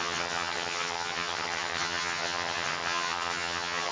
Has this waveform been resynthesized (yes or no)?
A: yes